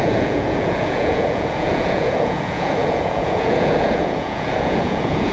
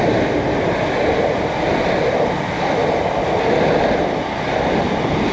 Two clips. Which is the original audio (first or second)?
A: second